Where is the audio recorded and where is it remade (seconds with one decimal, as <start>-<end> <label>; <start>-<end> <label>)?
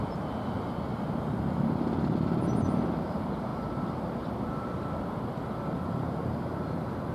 0.0-0.9 remade; 0.9-3.0 recorded; 3.0-7.1 remade